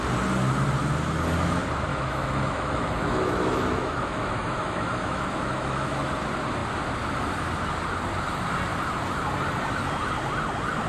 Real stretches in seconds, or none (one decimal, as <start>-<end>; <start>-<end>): 0.0-1.9; 6.1-10.9